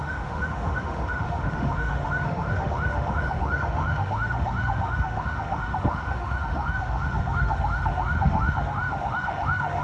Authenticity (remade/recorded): remade